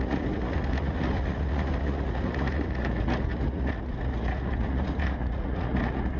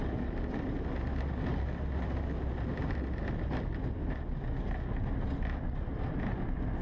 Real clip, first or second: second